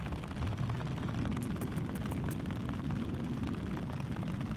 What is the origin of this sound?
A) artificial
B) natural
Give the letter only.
B